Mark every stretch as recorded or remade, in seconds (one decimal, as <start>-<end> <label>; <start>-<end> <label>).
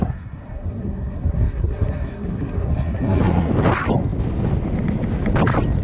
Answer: 0.0-3.5 remade; 3.5-5.8 recorded